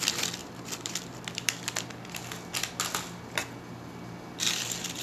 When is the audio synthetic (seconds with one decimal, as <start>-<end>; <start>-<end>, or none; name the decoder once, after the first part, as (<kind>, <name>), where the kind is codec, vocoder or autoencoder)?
0.4-1.5 (vocoder, BigVGAN v2)